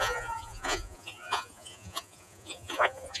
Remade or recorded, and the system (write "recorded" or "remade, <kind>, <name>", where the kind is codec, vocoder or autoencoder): remade, vocoder, Vocos